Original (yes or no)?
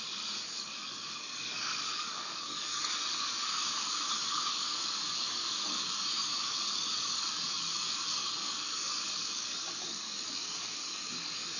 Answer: no